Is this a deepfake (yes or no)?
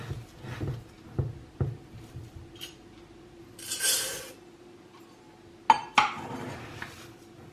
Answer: no